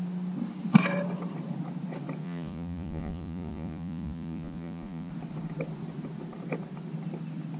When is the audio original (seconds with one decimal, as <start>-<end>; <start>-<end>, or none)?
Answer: 0.0-2.2; 5.1-7.6